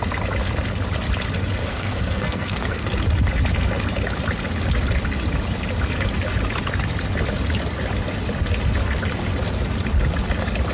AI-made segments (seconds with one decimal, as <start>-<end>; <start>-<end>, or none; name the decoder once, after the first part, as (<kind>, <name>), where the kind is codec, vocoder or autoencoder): 1.6-2.9 (codec, SNAC)